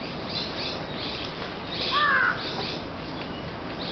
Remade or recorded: recorded